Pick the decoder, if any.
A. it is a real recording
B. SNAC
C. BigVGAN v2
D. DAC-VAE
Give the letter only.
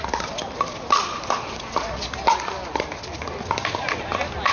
A